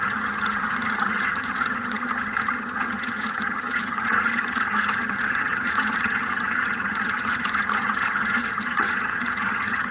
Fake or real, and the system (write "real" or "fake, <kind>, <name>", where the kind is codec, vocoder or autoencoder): fake, vocoder, HiFi-GAN